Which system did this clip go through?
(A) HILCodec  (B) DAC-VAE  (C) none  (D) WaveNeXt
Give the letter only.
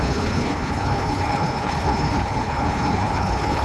A